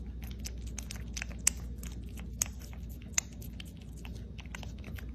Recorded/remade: recorded